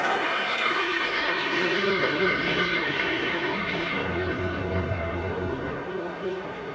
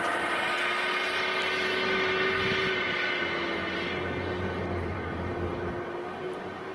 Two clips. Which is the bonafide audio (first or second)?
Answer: second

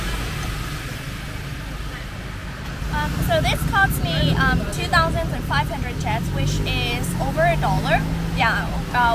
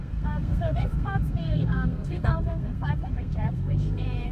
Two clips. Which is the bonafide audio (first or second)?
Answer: first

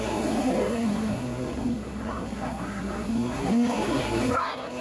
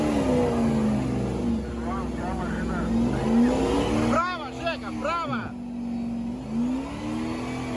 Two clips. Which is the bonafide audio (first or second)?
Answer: second